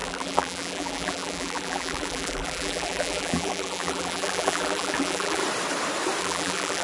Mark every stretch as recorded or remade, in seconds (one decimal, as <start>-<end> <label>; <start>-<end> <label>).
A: 0.0-5.4 remade; 5.4-6.2 recorded; 6.2-6.8 remade